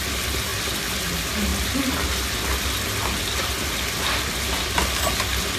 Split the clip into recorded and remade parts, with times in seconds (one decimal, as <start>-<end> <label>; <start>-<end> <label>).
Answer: 0.0-5.6 recorded